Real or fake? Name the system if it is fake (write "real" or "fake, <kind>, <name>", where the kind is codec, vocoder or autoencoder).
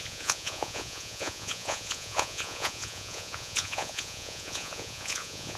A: fake, vocoder, Vocos